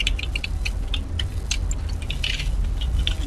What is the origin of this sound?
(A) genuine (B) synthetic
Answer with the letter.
A